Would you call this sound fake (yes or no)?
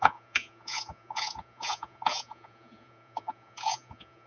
yes